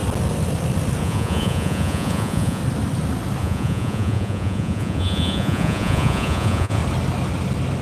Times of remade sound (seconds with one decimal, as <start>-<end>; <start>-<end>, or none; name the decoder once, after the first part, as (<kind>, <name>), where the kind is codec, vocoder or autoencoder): 1.0-2.6 (vocoder, Vocos); 3.4-6.8